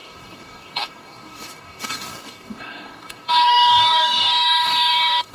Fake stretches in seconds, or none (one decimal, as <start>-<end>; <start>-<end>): 0.0-5.3